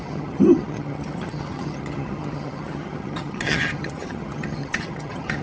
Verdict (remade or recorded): remade